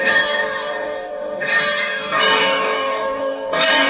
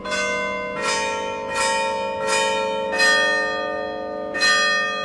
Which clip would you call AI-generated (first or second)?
first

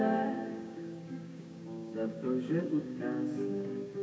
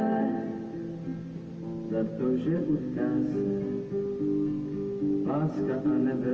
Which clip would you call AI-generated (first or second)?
first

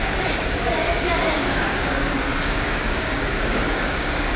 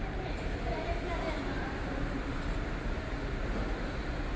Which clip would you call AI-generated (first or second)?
first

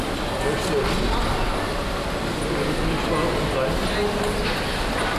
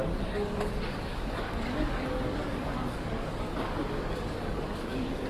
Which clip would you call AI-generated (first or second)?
second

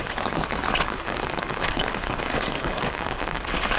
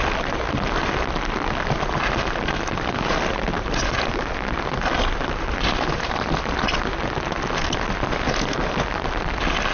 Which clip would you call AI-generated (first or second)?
first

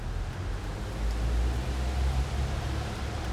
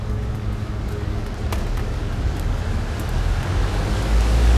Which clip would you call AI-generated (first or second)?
second